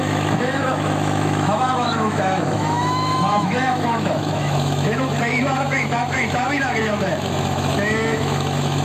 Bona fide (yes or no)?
no